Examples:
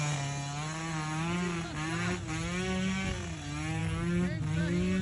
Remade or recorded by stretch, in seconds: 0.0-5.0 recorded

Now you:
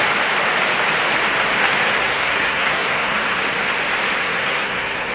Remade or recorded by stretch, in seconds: 0.0-2.0 recorded; 2.0-3.4 remade; 3.4-4.2 recorded; 4.2-5.1 remade

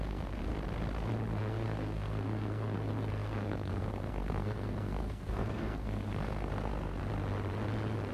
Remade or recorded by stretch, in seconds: 0.0-0.4 remade; 0.4-1.4 recorded; 1.4-7.0 remade; 7.0-8.1 recorded

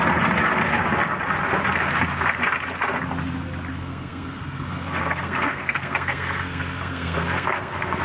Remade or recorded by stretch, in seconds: 0.0-3.7 recorded; 3.7-8.0 remade

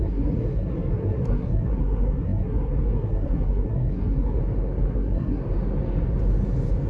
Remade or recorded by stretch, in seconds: 0.0-4.4 remade; 4.4-4.9 recorded; 4.9-5.4 remade; 5.4-6.9 recorded

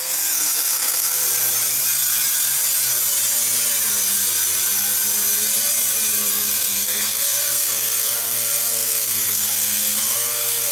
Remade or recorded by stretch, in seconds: 0.0-1.2 remade; 1.2-6.3 recorded; 6.3-10.7 remade

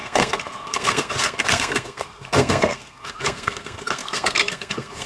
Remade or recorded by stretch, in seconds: 0.0-5.1 remade